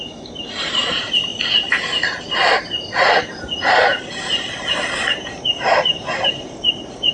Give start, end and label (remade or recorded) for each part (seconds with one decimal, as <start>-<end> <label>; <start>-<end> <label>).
0.0-1.3 remade; 1.3-2.2 recorded; 2.2-7.1 remade

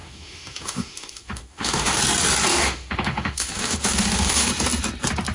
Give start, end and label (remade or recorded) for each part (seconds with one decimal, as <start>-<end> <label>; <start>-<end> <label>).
0.0-2.0 remade; 2.0-2.5 recorded; 2.5-4.5 remade; 4.5-5.3 recorded

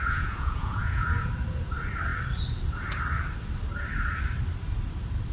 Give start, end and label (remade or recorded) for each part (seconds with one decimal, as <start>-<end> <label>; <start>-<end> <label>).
0.0-1.3 remade; 1.3-5.3 recorded